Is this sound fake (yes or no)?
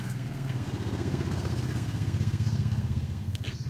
yes